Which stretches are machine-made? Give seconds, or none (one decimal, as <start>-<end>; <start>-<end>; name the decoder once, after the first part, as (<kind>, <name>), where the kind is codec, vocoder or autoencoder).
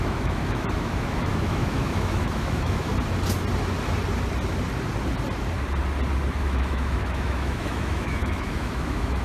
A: 0.0-2.9 (autoencoder, DAC-VAE); 6.4-9.2